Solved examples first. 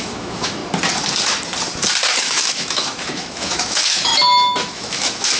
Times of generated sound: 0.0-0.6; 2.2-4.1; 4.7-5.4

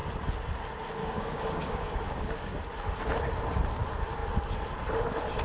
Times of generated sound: 1.0-2.6

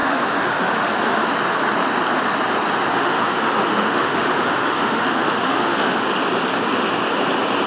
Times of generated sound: 0.0-1.3; 2.9-6.0

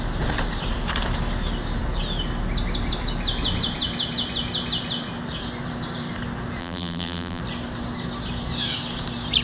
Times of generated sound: 6.6-7.4

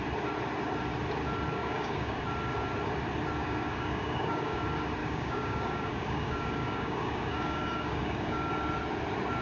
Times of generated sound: 1.6-2.2; 3.4-4.6; 5.0-8.5

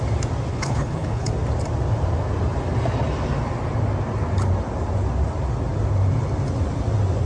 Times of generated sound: 0.5-1.3

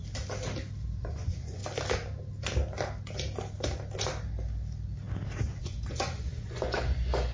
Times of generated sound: 1.0-1.6; 5.6-7.3